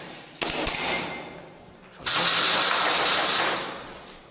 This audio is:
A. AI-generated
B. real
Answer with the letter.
B